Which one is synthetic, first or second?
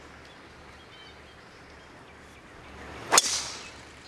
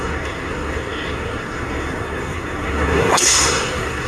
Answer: second